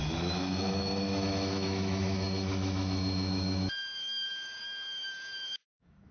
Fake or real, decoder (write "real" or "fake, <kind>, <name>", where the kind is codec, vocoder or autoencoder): fake, autoencoder, DAC-VAE